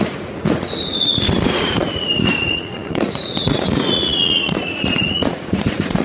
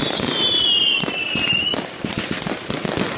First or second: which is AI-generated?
first